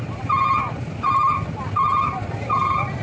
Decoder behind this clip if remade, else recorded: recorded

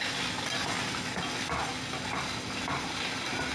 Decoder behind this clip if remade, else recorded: recorded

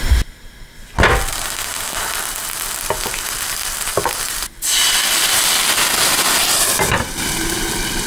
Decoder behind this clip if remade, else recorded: recorded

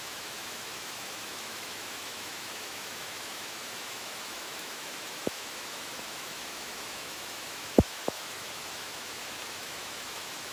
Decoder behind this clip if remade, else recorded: remade, autoencoder, DAC-VAE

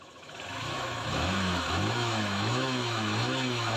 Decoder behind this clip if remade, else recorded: remade, autoencoder, DAC-VAE